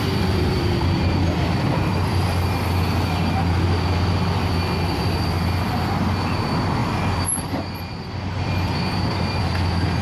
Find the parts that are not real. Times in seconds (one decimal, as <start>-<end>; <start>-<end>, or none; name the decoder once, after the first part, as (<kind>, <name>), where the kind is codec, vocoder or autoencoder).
0.0-2.2 (vocoder, BigVGAN v2); 6.8-9.4